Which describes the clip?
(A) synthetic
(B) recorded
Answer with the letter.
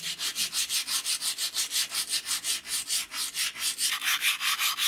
B